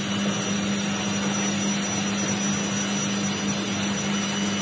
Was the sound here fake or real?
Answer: real